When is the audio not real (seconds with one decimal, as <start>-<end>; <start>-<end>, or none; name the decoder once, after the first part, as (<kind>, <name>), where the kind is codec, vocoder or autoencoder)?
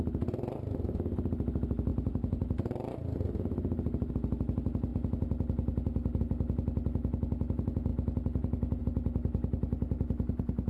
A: 1.9-4.1 (vocoder, BigVGAN v2)